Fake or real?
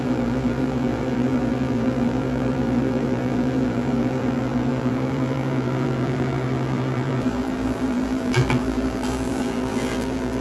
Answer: fake